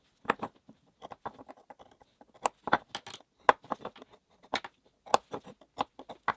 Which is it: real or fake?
real